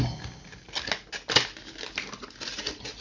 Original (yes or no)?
yes